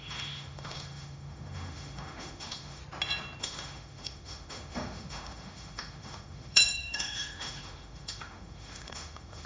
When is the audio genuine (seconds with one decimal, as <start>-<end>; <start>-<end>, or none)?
2.8-3.4